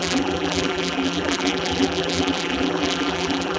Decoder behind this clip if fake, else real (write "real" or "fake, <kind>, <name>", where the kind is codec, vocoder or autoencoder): fake, vocoder, BigVGAN v2